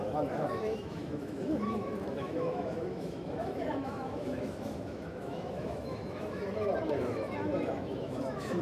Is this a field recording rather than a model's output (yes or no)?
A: no